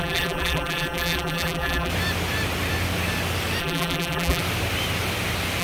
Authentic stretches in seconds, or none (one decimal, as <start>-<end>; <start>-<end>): 1.9-3.6; 4.4-5.6